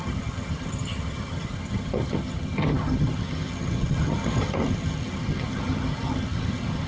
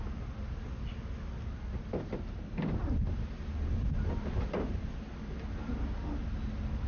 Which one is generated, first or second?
first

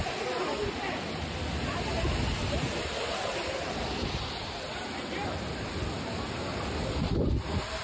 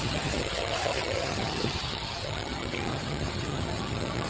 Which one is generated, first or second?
second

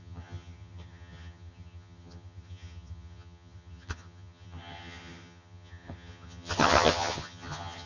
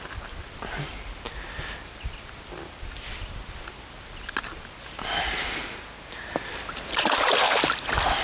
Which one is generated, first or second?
first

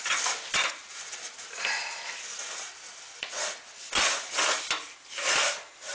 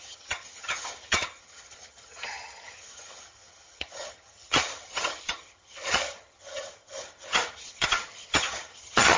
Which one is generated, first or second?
second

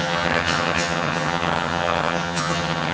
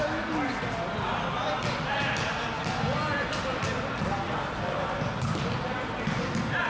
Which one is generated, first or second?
first